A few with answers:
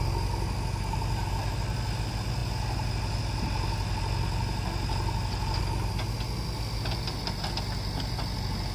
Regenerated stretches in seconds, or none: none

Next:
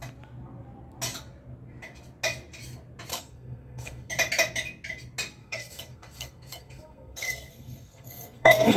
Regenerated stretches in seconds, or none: 3.1-4.1 (codec, SNAC); 5.4-8.8

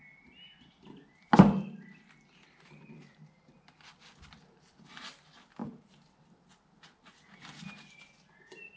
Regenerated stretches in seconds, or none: none

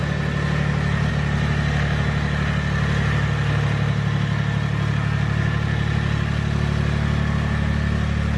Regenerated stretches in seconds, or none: none

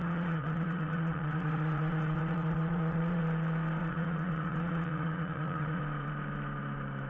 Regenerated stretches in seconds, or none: 0.0-3.2 (vocoder, Vocos); 3.8-5.8

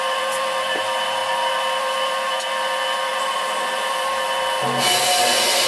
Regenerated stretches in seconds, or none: none